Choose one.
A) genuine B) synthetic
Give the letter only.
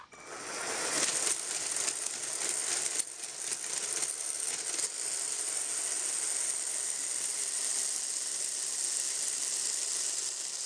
A